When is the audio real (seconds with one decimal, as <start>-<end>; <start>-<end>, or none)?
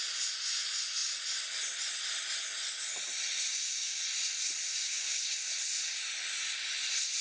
0.0-3.5; 4.0-4.7; 5.5-7.2